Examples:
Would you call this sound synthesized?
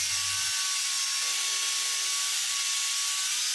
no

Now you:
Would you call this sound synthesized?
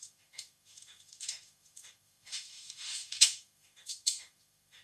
yes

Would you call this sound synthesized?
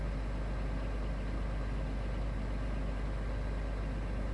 no